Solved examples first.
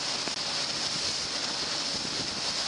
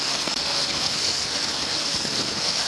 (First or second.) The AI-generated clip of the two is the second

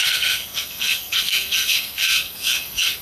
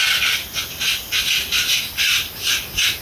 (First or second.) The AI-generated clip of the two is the first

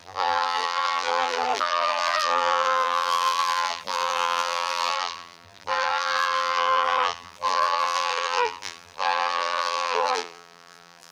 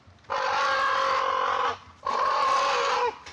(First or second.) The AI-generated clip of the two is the first